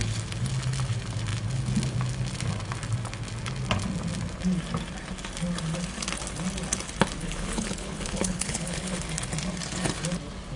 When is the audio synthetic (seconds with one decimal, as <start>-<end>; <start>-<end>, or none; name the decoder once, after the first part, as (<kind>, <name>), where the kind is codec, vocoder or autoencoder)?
7.2-9.0 (codec, HILCodec)

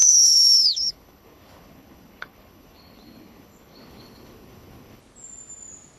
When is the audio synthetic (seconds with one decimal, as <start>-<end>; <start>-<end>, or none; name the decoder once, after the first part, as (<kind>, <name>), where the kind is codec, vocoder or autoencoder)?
0.0-5.0 (codec, HILCodec)

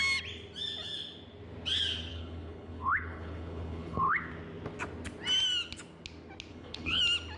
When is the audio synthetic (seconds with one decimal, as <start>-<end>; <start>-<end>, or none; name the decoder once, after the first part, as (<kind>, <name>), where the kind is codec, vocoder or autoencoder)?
2.1-4.2 (codec, HILCodec); 6.5-7.0

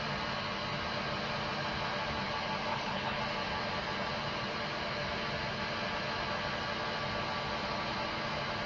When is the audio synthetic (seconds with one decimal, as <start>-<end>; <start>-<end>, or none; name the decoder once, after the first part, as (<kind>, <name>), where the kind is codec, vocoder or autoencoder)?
2.7-3.2 (codec, HILCodec)

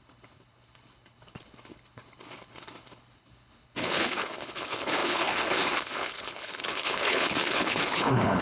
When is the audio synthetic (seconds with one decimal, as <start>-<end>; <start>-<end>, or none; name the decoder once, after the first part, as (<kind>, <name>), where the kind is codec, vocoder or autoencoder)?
0.0-8.4 (codec, HILCodec)

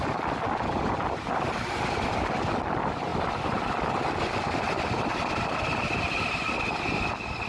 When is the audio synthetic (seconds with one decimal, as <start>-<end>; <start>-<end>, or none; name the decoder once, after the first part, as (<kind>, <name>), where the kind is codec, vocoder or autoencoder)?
none